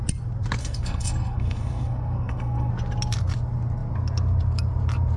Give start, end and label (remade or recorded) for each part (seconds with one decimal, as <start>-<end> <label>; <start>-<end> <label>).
0.0-0.6 recorded; 0.6-2.7 remade; 2.7-5.2 recorded